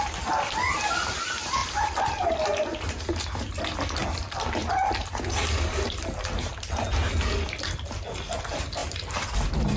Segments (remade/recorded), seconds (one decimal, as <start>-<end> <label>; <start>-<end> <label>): 0.0-9.8 recorded